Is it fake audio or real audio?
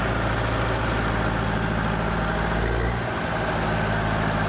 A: real